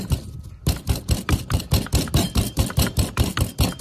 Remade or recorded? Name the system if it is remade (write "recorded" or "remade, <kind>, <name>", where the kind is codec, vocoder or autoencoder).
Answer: recorded